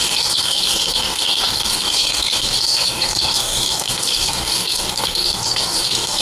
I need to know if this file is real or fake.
fake